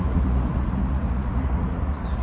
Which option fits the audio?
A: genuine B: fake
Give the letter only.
B